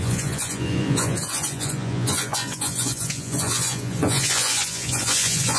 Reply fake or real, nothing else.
fake